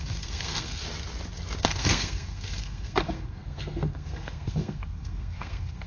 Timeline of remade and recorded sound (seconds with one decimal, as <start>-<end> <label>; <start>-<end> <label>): 0.0-0.8 remade; 0.8-1.6 recorded; 1.6-5.9 remade